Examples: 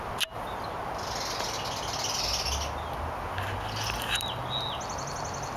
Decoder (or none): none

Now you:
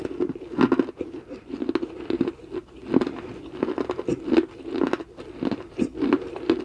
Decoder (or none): none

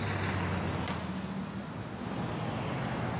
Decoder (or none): none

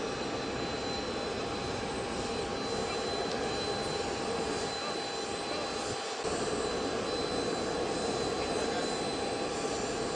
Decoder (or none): none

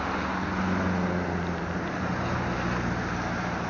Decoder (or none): none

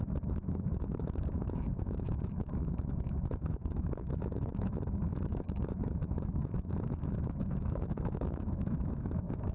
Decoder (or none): autoencoder, DAC-VAE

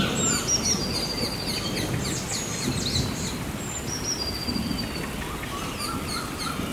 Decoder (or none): none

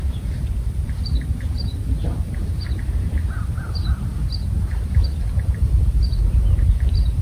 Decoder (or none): none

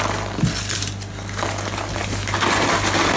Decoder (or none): none